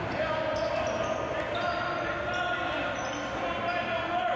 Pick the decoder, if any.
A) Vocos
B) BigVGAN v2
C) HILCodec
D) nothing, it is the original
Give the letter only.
D